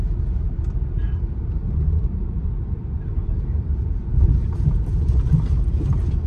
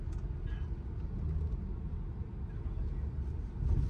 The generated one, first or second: first